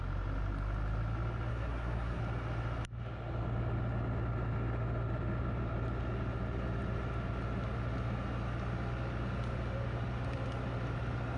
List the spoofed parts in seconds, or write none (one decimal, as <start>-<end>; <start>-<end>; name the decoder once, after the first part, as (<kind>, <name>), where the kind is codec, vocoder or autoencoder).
1.5-2.2 (codec, SNAC)